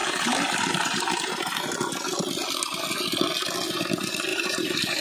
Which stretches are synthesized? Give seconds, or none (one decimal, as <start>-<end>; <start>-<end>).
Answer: 0.0-1.6; 4.3-5.0